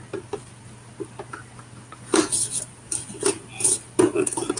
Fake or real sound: real